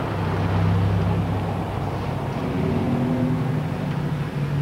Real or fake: real